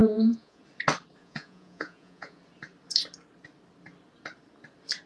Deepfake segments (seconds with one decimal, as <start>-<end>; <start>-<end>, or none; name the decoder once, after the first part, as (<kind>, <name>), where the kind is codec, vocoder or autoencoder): 0.0-0.6 (vocoder, Vocos); 1.2-2.4